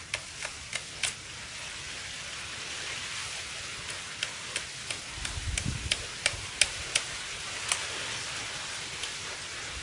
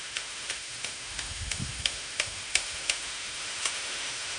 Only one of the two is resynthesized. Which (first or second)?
second